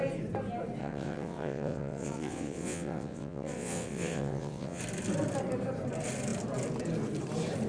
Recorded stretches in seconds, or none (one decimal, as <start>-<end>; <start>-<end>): 0.0-0.8; 4.8-7.7